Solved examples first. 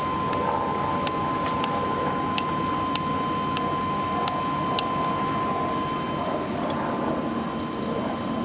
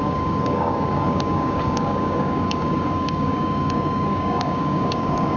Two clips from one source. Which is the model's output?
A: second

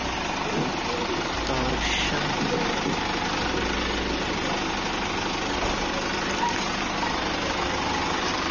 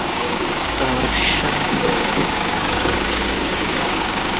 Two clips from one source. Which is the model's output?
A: second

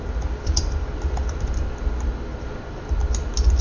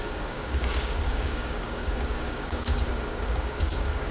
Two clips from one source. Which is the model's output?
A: second